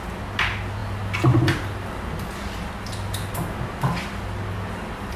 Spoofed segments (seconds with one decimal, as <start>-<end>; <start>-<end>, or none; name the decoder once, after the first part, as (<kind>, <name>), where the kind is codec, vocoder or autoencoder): none